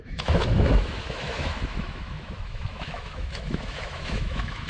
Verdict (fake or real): fake